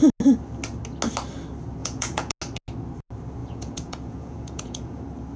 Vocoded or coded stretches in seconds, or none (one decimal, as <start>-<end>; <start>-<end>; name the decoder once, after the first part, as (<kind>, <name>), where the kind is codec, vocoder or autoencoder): 1.8-2.3 (vocoder, Vocos); 3.4-5.0